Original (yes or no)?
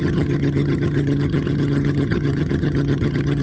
no